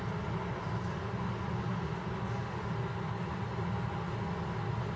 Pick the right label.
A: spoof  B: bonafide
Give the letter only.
B